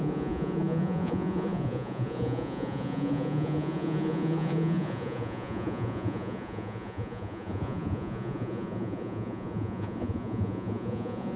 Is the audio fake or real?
fake